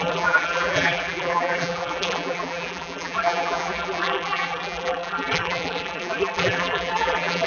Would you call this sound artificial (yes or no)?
yes